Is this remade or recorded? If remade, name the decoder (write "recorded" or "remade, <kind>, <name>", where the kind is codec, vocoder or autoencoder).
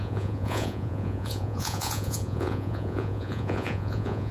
remade, vocoder, Vocos